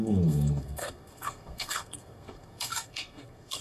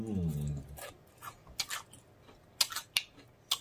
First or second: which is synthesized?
first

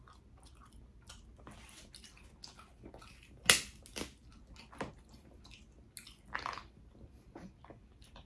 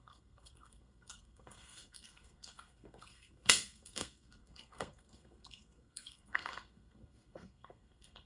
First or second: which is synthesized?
second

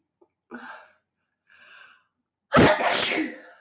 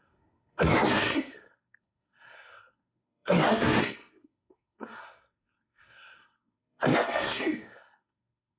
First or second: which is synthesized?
second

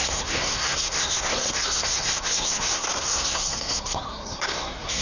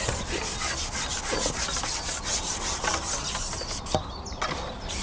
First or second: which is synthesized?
first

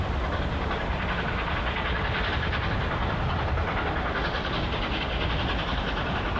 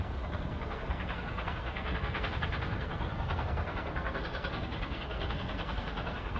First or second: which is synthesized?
second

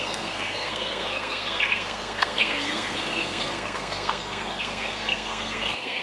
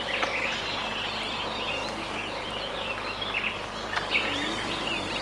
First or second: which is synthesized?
first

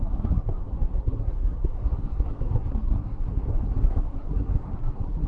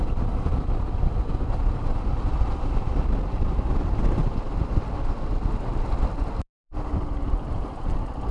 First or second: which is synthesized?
first